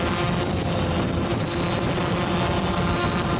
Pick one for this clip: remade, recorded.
recorded